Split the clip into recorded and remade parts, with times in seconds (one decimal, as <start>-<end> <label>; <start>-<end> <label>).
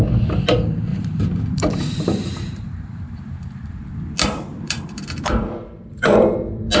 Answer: 0.0-0.9 recorded; 0.9-3.9 remade; 3.9-4.5 recorded; 4.5-6.2 remade; 6.2-6.8 recorded